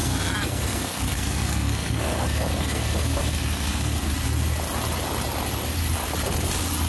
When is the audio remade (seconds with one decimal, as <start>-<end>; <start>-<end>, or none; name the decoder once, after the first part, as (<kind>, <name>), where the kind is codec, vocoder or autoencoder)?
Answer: 0.0-4.1 (codec, SNAC)